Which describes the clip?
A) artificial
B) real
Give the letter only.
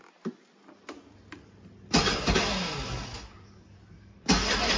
B